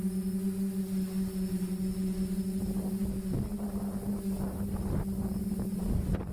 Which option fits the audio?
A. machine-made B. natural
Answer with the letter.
B